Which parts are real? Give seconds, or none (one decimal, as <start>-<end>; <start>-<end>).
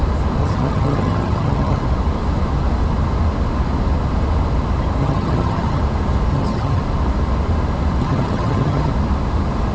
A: 0.0-0.4; 1.8-5.0; 5.8-6.3; 6.8-8.0; 8.9-9.7